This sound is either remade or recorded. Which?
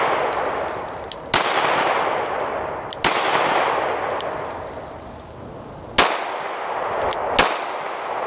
recorded